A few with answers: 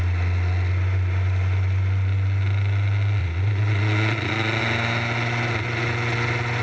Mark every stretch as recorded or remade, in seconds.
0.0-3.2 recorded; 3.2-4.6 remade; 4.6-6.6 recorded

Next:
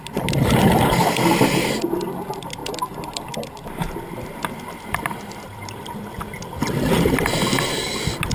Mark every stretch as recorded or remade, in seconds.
0.0-8.3 recorded

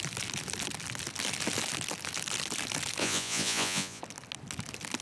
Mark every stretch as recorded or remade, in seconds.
0.0-3.0 recorded; 3.0-4.0 remade; 4.0-5.0 recorded

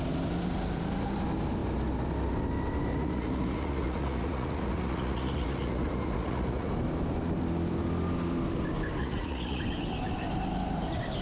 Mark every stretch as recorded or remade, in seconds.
0.0-2.9 recorded; 2.9-6.7 remade; 6.7-9.0 recorded; 9.0-9.6 remade; 9.6-11.2 recorded

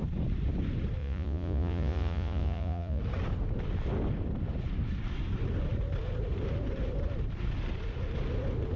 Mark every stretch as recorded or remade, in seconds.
0.0-1.0 recorded; 1.0-3.0 remade; 3.0-8.8 recorded

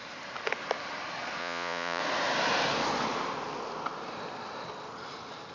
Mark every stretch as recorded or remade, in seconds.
0.0-1.4 recorded; 1.4-2.0 remade; 2.0-5.5 recorded